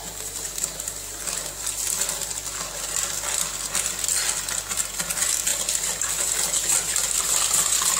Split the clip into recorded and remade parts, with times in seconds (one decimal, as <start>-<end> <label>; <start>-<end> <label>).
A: 0.0-8.0 recorded